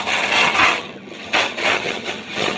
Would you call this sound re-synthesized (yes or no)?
yes